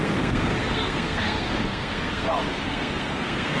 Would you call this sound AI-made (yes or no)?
yes